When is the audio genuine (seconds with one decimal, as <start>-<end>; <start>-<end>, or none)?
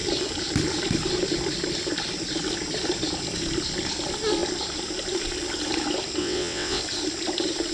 0.0-6.2; 6.8-7.7